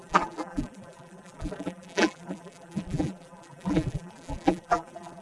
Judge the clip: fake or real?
fake